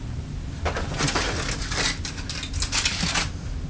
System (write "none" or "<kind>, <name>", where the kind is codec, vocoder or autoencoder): none